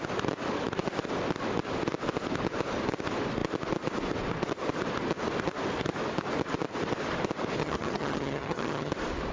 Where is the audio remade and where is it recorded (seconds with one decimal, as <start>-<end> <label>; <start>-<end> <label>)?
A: 0.0-7.6 recorded; 7.6-8.9 remade; 8.9-9.3 recorded